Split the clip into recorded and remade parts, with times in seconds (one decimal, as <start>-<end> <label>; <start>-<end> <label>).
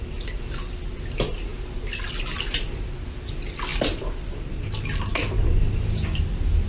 0.0-6.7 recorded